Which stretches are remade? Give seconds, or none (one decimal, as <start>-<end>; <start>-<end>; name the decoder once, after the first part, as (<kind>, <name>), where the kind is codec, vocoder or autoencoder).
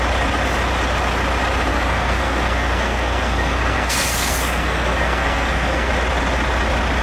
1.7-5.9 (codec, SNAC)